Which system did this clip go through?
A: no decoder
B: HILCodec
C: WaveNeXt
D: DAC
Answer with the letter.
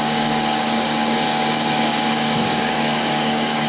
D